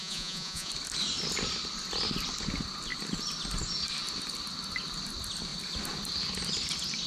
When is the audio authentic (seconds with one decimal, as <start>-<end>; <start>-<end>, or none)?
0.7-7.1